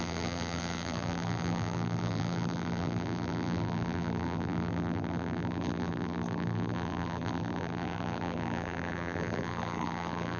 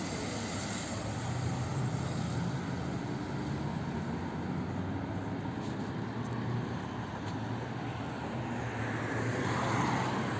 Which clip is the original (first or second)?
second